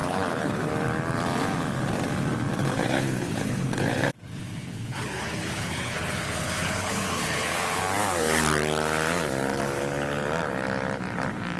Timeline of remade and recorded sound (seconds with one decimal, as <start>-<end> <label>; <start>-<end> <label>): 0.0-0.7 remade; 0.7-2.6 recorded; 2.6-7.8 remade; 7.8-11.6 recorded